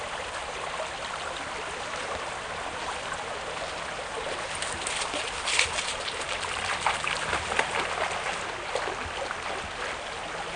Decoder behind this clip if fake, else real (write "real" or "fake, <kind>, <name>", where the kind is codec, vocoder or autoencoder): real